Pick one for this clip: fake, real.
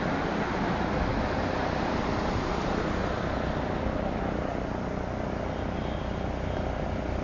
real